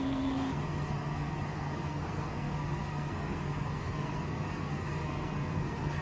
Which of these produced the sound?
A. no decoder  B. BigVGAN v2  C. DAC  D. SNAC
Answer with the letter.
D